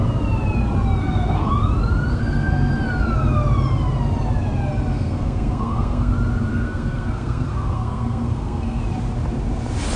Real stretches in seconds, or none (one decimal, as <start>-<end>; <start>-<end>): 0.0-1.0; 1.5-2.1; 2.7-4.9; 6.1-6.5; 8.8-10.0